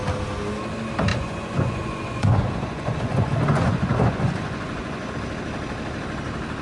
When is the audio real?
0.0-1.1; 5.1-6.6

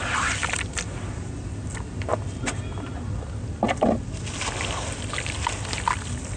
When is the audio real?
0.0-6.4

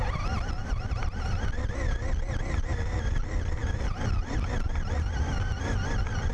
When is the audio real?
0.0-6.3

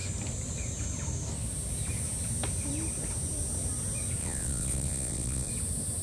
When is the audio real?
0.0-4.2; 5.5-6.0

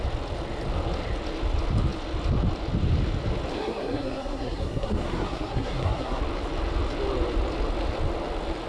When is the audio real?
0.0-3.5; 6.2-8.7